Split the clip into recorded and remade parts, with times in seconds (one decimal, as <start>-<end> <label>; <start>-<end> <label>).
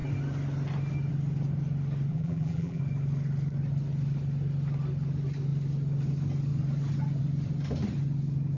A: 0.0-2.1 recorded; 2.1-2.8 remade; 2.8-8.6 recorded